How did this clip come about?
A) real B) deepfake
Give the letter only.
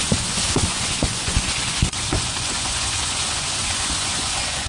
B